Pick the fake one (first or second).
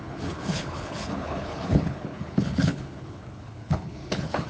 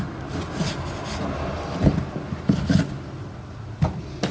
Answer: first